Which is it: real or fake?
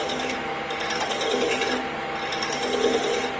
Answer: real